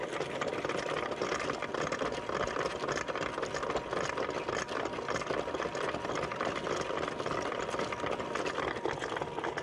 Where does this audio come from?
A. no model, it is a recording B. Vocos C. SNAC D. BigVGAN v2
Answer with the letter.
A